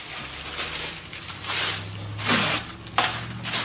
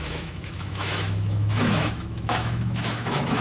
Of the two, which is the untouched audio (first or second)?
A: first